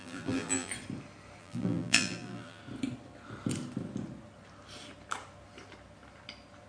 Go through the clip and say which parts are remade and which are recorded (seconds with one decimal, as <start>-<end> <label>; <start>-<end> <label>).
0.0-0.7 remade; 0.7-1.4 recorded; 1.4-2.6 remade; 2.6-6.7 recorded